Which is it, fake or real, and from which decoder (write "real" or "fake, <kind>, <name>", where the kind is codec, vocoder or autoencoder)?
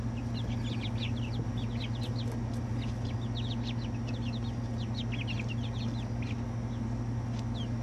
real